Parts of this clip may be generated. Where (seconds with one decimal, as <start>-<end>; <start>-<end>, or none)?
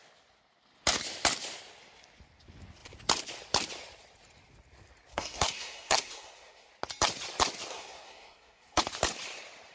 5.1-6.7; 7.7-8.8